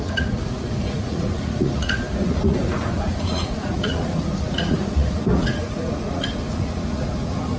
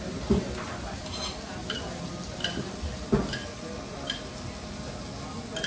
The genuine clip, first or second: second